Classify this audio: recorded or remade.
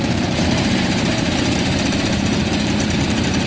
remade